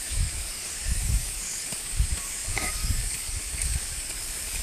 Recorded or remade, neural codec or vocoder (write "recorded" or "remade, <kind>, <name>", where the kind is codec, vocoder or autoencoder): remade, codec, DAC